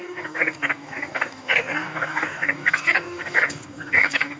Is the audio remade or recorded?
remade